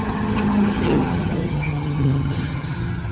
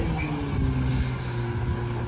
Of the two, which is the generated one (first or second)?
first